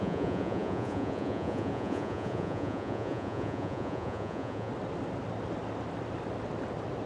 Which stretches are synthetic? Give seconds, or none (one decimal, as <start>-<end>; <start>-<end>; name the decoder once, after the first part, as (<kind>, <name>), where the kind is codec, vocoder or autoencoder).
0.0-4.7 (vocoder, Vocos)

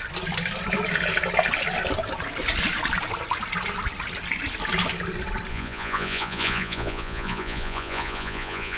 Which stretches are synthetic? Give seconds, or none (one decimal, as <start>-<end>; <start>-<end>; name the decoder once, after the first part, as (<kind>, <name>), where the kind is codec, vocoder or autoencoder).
5.5-8.8 (vocoder, Vocos)

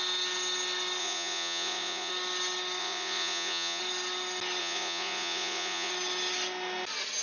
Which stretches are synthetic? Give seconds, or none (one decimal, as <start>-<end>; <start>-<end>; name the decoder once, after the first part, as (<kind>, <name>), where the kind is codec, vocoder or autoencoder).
1.0-2.1 (vocoder, Vocos); 2.8-3.8; 4.6-5.9

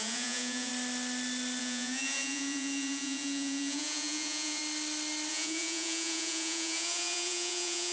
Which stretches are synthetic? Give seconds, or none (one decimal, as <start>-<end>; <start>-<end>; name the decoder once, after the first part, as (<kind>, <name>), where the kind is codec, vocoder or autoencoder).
0.0-0.7 (vocoder, Vocos); 1.6-4.6; 5.3-7.9

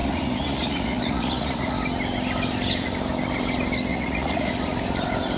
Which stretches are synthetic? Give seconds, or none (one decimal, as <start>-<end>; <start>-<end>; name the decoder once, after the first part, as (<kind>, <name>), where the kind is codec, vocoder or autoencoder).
0.0-1.7 (vocoder, Vocos); 3.9-4.5

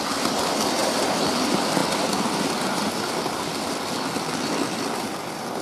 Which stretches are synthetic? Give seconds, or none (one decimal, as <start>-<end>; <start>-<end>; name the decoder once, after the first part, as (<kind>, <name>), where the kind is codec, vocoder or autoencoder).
none